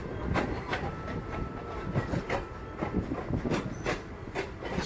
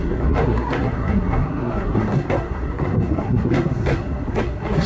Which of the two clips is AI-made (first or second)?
second